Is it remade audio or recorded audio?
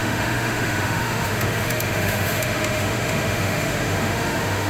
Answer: remade